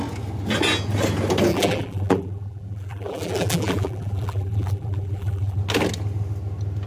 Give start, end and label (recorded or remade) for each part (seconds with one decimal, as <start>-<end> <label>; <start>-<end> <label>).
0.0-1.5 recorded; 1.5-5.6 remade; 5.6-6.9 recorded